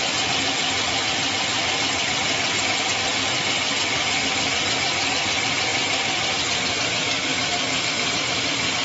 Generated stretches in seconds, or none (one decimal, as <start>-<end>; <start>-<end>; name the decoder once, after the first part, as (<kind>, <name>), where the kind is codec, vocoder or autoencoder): 5.7-6.4 (vocoder, BigVGAN v2); 7.4-8.1